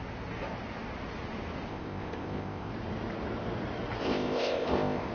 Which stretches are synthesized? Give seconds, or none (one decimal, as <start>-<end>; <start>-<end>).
1.7-2.7; 4.0-5.1